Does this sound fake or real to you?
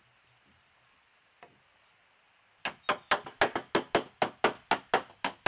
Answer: real